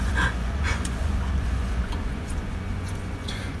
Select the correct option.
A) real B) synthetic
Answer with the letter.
B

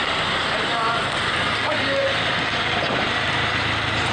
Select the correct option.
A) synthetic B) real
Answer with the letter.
B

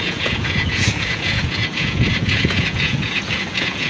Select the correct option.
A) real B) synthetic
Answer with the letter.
B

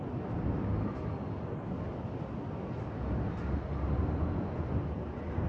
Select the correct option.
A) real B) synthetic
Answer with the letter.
A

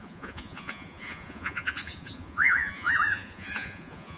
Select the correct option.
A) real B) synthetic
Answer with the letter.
B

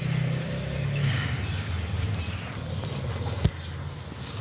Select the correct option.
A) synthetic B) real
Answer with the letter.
B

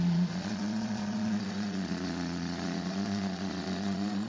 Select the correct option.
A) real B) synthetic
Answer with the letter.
B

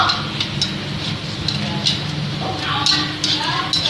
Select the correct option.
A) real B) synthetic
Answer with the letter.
A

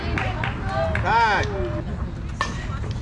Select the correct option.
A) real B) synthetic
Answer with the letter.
A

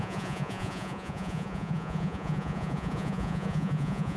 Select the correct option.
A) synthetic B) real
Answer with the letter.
A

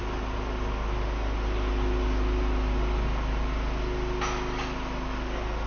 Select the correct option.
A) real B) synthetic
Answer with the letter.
A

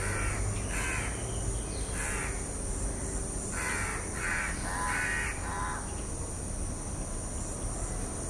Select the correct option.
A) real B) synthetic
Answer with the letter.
A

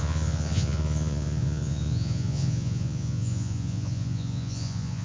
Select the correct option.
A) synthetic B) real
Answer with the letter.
A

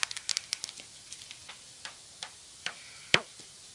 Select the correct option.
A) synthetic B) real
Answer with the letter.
B